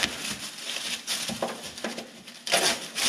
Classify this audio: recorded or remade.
recorded